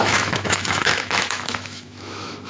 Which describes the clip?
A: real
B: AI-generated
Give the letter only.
B